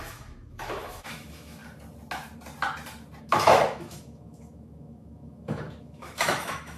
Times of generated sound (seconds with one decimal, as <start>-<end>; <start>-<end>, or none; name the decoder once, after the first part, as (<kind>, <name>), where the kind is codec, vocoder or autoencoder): 0.0-1.6 (autoencoder, DAC-VAE); 3.2-6.8